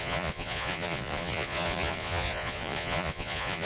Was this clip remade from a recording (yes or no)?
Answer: yes